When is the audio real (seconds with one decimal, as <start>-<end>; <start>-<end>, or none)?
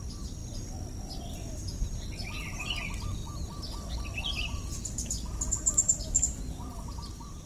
0.0-7.5